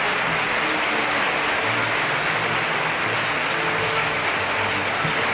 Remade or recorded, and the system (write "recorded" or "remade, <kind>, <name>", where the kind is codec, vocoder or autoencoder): recorded